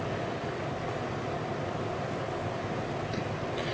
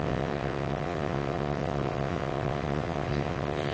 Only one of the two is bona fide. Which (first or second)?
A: first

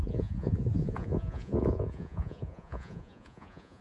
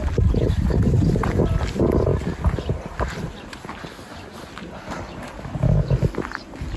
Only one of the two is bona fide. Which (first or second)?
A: second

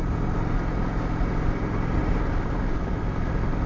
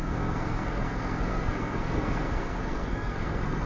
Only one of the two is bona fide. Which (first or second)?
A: first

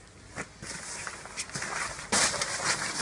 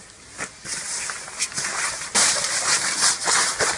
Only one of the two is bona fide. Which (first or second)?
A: first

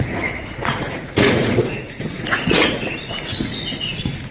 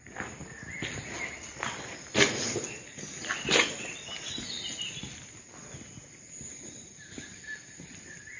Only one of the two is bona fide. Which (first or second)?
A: second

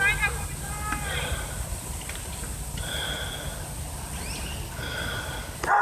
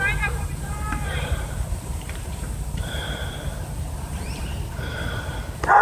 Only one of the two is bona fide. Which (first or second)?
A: first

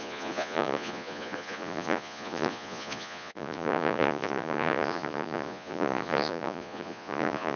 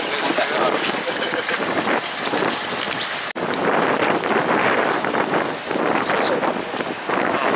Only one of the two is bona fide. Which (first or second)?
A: second